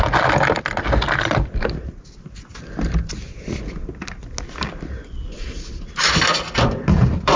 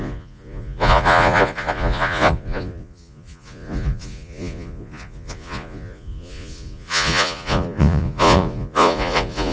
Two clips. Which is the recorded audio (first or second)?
first